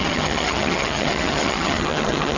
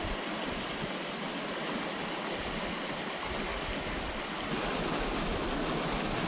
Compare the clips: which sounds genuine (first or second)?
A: second